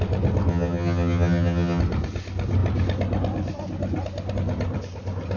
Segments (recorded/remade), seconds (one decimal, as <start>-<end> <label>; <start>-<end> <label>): 0.0-0.5 recorded; 0.5-1.8 remade; 1.8-5.4 recorded

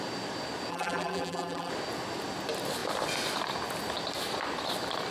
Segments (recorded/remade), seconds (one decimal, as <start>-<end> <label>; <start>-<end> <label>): 0.0-0.7 recorded; 0.7-1.7 remade; 1.7-5.1 recorded

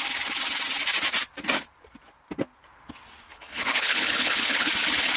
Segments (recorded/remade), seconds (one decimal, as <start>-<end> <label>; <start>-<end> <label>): 0.0-3.3 recorded; 3.3-4.7 remade; 4.7-5.2 recorded

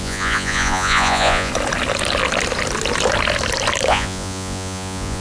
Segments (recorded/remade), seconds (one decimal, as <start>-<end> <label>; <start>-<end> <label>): 0.0-1.5 remade; 1.5-3.9 recorded; 3.9-5.2 remade